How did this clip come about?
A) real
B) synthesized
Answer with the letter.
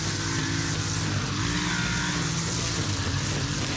A